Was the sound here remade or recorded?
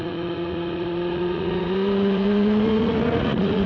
remade